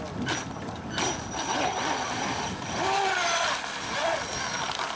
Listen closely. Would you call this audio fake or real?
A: real